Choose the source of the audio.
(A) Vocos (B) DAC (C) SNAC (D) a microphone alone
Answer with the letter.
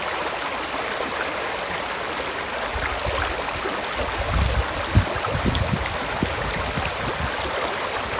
D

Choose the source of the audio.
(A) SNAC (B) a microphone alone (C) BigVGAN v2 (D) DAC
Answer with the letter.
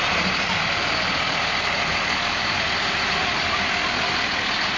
B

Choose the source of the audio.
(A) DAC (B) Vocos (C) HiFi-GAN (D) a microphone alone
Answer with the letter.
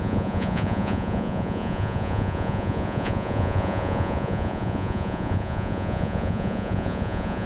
B